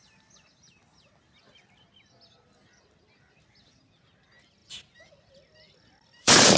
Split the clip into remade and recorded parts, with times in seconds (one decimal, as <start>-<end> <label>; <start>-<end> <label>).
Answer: 0.0-4.6 recorded; 4.6-6.6 remade